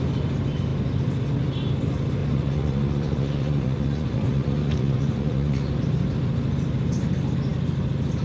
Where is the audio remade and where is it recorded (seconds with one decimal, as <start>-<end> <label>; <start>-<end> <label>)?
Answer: 0.0-2.2 recorded; 2.2-5.7 remade; 5.7-8.2 recorded